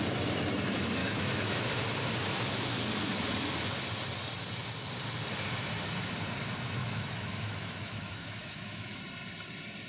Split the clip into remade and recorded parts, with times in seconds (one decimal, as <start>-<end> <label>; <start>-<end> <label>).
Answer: 0.0-1.0 recorded; 1.0-1.6 remade; 1.6-6.8 recorded; 6.8-9.0 remade; 9.0-9.9 recorded